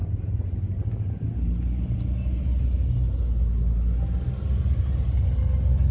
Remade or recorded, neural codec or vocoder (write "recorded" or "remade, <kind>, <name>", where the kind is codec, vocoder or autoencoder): recorded